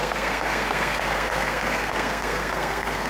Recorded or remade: remade